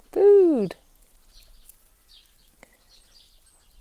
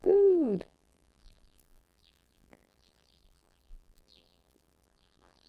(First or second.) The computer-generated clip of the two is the second